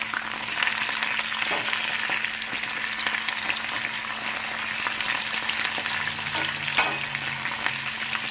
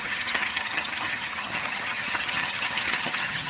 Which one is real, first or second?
first